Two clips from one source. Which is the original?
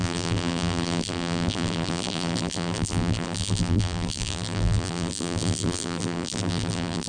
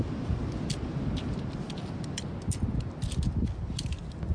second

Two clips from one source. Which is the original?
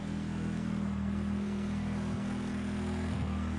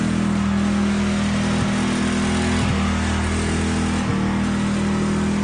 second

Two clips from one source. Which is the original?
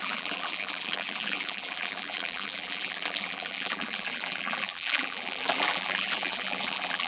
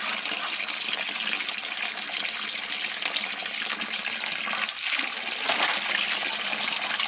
second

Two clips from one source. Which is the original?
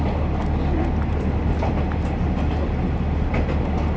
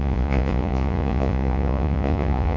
first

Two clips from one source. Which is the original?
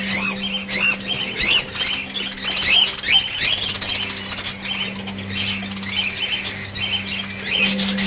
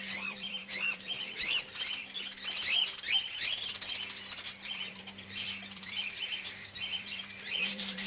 first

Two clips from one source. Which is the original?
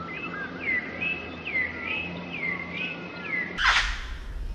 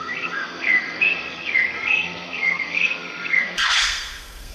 first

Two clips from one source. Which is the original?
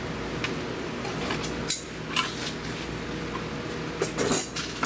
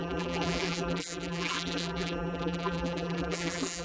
first